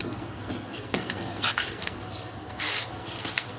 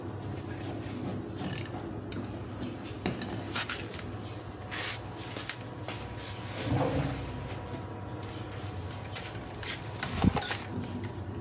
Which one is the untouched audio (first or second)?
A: second